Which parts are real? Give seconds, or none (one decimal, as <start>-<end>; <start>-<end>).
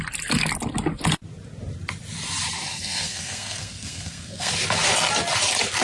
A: 0.0-2.7; 4.5-5.8